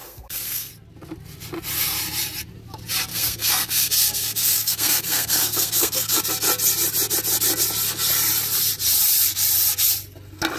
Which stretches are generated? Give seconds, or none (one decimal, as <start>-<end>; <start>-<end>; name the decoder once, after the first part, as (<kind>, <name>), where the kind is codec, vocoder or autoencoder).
0.0-0.7 (codec, SNAC); 3.1-6.2